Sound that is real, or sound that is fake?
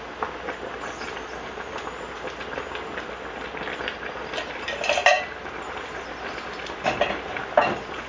real